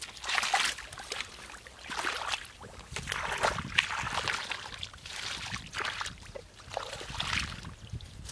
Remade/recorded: recorded